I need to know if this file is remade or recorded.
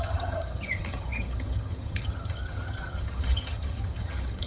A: remade